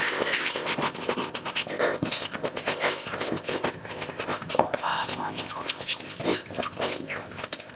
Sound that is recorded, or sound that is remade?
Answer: remade